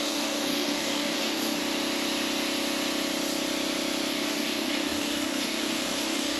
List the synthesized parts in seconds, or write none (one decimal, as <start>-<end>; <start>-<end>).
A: 0.0-1.6; 4.1-6.4